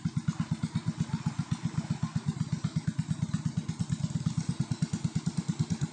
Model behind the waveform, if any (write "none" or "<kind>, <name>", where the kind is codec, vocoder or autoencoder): none